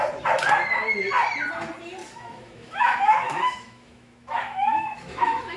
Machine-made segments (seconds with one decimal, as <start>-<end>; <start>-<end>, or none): 2.0-5.6